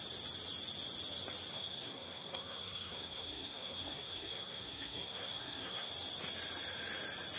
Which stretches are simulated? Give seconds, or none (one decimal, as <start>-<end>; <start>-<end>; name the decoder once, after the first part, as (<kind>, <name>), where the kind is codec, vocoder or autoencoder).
1.5-5.9 (codec, SNAC)